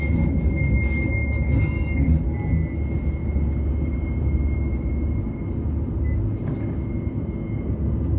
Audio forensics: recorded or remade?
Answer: recorded